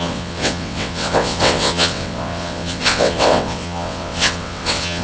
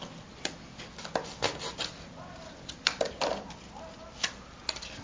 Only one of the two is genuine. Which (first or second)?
second